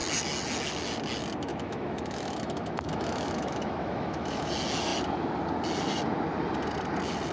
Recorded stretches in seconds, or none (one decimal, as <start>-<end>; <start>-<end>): 0.0-1.5; 4.5-7.3